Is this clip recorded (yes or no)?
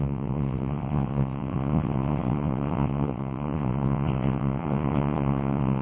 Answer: no